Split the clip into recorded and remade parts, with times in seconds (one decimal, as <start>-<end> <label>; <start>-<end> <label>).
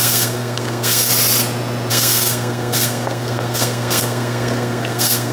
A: 0.0-1.1 remade; 1.1-1.9 recorded; 1.9-5.3 remade